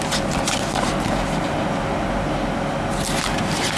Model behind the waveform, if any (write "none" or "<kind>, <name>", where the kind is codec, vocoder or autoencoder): none